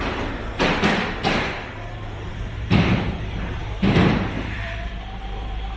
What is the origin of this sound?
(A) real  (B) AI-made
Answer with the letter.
B